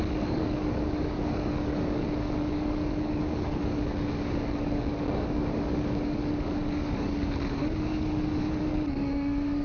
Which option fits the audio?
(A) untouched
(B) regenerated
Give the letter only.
B